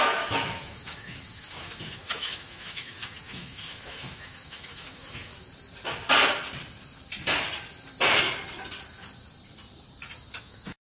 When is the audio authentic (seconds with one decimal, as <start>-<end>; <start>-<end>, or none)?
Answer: 5.3-10.4